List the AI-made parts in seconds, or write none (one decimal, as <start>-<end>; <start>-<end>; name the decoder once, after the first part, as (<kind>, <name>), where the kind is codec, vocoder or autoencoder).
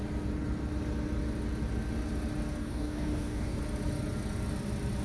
2.6-3.6 (codec, DAC)